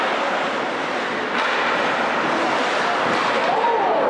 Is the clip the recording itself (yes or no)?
yes